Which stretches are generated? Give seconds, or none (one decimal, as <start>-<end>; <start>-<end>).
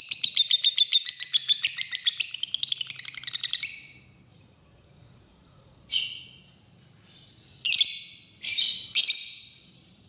4.3-6.0